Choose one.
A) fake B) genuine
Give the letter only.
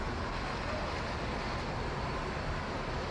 B